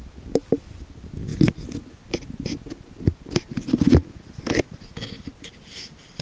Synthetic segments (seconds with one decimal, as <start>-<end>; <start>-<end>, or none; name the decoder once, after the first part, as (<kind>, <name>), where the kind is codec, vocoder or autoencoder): none

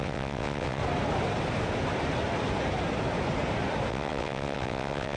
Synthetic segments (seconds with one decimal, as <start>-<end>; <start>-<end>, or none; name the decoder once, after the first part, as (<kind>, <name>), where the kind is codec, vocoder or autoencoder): 0.0-0.8 (vocoder, WaveNeXt); 3.9-5.2

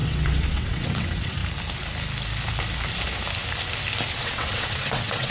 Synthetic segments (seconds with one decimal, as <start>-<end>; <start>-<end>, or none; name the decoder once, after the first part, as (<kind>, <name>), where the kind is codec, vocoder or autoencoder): 0.0-1.4 (vocoder, WaveNeXt); 4.1-5.3

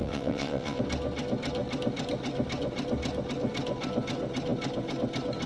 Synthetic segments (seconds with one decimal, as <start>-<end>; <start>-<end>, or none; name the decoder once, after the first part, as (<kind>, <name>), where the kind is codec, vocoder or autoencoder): 0.0-0.8 (vocoder, WaveNeXt)